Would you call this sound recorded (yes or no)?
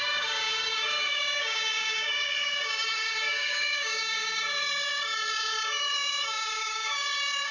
no